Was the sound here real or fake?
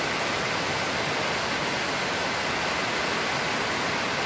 real